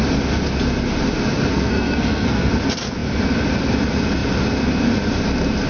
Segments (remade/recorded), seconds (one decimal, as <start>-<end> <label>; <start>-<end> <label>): 0.0-1.5 recorded; 1.5-2.5 remade; 2.5-5.7 recorded